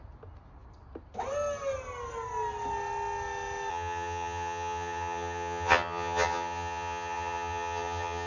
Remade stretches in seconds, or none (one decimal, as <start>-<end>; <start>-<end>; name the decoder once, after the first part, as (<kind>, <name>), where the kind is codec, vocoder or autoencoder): 3.7-8.3 (vocoder, HiFi-GAN)